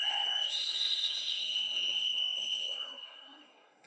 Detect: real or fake fake